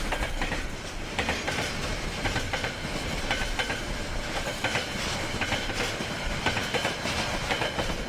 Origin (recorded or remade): recorded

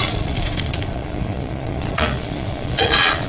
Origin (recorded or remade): remade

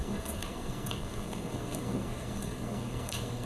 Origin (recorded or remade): remade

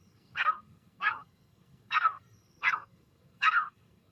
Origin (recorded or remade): remade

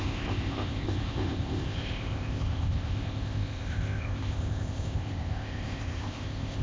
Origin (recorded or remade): remade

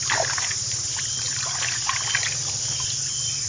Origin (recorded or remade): recorded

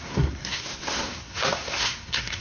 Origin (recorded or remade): remade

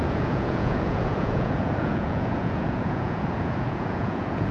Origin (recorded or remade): remade